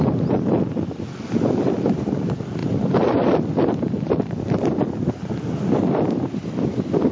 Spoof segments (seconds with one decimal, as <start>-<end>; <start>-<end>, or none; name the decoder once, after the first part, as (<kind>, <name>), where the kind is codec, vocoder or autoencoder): 2.6-5.8 (vocoder, BigVGAN v2)